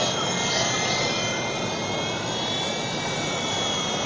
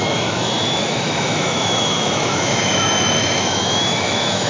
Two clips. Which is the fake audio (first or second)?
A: second